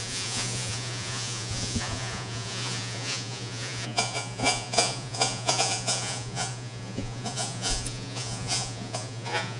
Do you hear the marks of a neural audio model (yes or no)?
yes